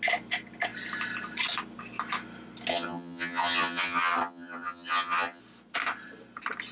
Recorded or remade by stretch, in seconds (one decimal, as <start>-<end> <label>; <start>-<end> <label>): 0.0-2.7 recorded; 2.7-5.4 remade; 5.4-6.7 recorded